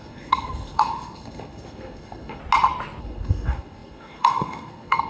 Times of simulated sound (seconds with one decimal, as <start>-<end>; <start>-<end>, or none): 0.0-2.4; 3.0-5.1